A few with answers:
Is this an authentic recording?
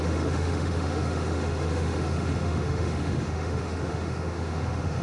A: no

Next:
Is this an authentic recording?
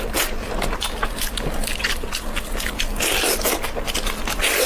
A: yes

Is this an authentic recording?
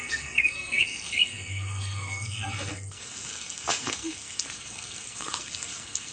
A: no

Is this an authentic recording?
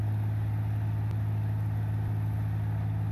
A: yes